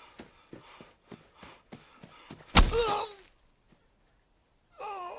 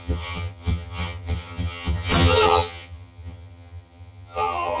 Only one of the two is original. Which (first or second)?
first